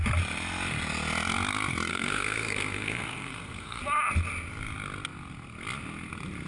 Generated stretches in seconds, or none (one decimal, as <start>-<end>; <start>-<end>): 1.9-3.8